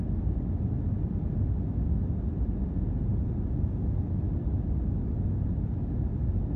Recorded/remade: recorded